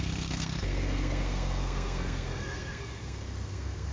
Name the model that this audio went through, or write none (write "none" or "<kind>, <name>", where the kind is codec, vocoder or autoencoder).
codec, SNAC